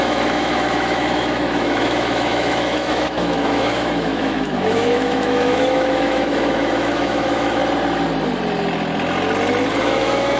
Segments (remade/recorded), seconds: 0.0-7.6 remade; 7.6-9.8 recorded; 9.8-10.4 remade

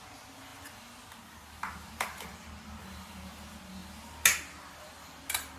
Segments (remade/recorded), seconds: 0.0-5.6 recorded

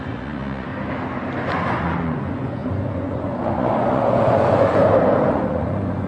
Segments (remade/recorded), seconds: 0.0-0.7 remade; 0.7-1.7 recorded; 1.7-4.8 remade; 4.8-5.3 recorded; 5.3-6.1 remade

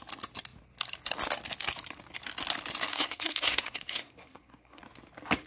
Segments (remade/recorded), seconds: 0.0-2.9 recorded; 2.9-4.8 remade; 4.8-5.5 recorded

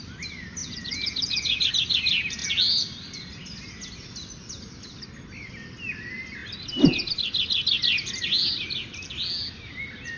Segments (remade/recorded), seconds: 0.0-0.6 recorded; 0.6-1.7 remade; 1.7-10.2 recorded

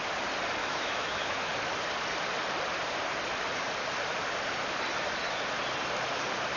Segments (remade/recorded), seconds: 0.0-0.6 recorded; 0.6-1.5 remade; 1.5-6.6 recorded

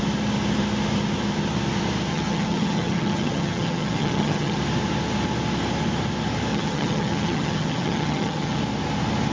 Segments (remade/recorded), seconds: 0.0-2.1 recorded; 2.1-4.6 remade; 4.6-6.5 recorded; 6.5-8.6 remade; 8.6-9.3 recorded